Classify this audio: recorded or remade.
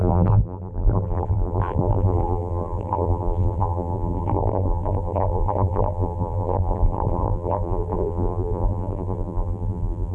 remade